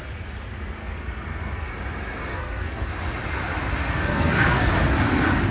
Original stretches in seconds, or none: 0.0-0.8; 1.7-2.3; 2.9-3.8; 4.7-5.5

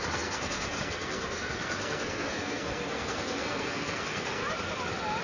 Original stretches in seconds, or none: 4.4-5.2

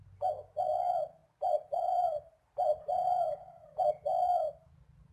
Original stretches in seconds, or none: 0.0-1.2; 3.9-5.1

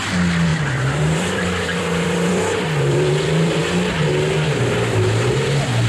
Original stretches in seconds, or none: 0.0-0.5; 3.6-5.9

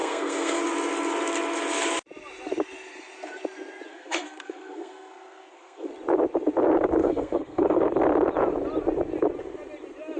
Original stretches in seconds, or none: 0.6-3.9; 5.9-7.0; 7.8-10.2

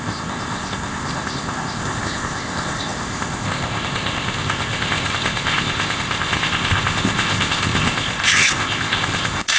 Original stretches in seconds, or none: none

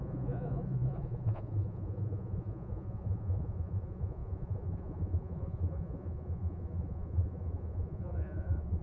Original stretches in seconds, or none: none

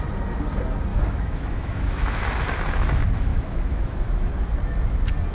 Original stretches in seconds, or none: 0.0-0.9; 2.3-3.3; 4.3-5.3